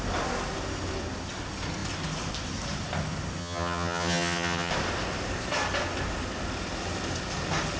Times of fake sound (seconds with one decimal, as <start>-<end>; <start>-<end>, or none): 3.4-4.7